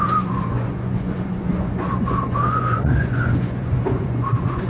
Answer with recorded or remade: remade